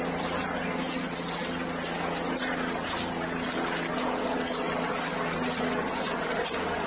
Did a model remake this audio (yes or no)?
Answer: no